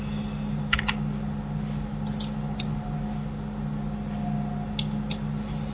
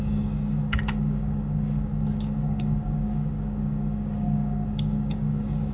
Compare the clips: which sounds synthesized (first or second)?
second